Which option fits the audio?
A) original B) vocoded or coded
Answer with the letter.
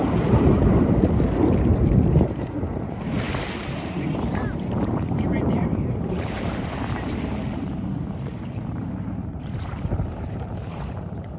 B